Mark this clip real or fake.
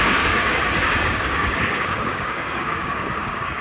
fake